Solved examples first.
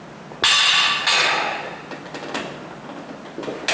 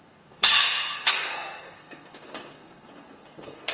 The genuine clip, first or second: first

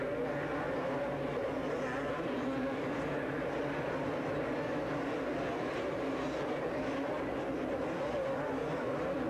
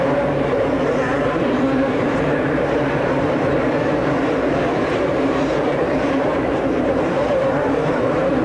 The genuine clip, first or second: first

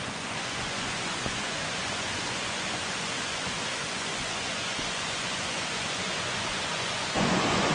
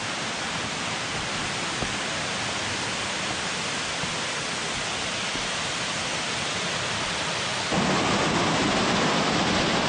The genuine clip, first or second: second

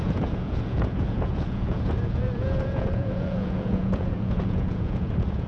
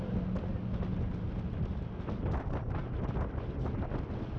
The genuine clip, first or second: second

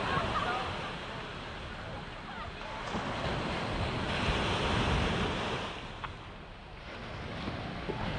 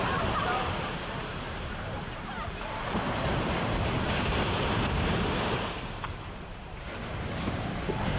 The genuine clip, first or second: first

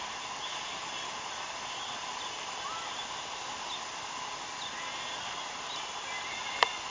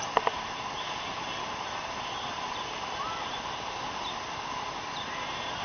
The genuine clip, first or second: first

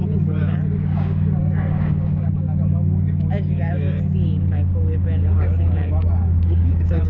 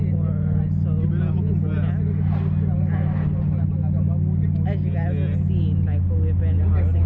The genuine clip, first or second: second